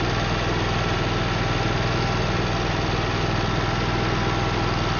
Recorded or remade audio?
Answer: recorded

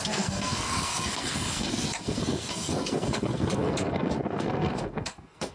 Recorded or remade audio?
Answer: remade